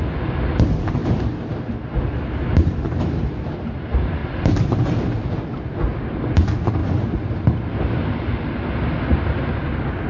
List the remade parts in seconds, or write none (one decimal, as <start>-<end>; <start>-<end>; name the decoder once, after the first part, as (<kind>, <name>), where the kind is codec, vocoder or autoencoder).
4.2-4.7 (vocoder, BigVGAN v2)